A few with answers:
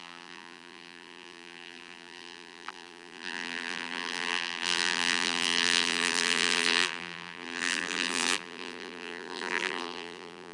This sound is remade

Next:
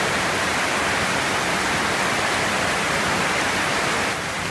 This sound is recorded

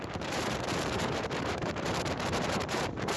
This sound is remade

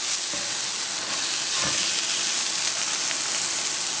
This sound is recorded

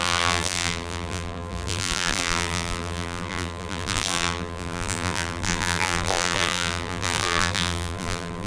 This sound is remade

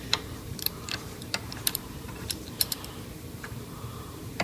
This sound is remade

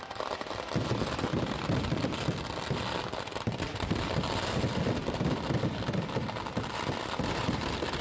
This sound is remade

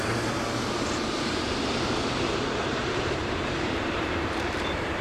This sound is remade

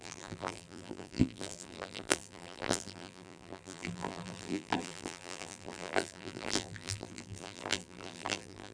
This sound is remade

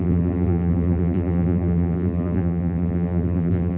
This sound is remade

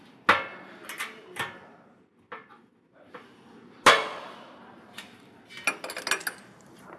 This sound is recorded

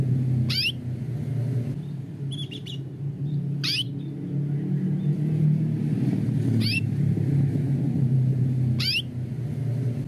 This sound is recorded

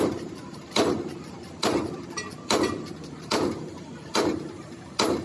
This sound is remade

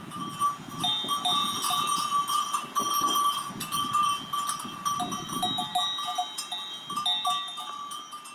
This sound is recorded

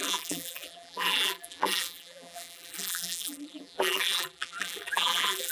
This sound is remade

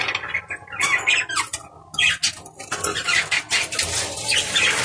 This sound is recorded